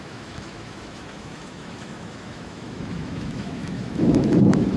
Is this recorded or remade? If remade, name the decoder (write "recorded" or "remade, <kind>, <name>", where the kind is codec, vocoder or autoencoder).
remade, autoencoder, DAC-VAE